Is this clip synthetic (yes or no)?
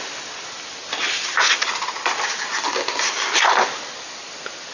no